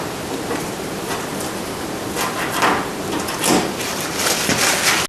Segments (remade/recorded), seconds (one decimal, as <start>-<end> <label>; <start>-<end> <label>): 0.0-5.1 recorded